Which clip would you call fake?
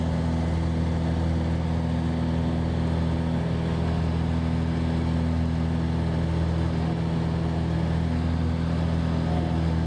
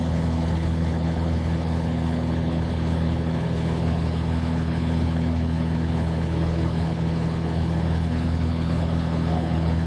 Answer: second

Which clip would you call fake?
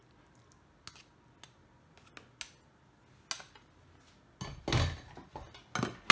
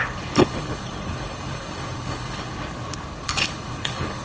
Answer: second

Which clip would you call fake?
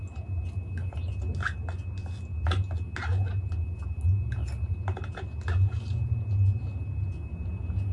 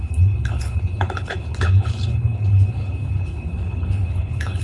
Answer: second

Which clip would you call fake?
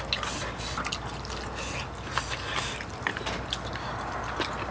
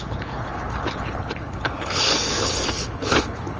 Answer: second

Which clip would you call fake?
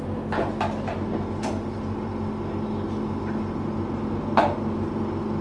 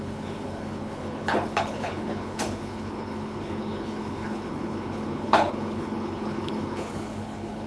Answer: second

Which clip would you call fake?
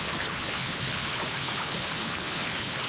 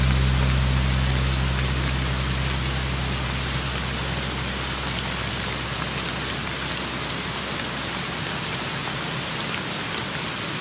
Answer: first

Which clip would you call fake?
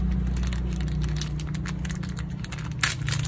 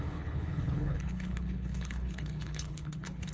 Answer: second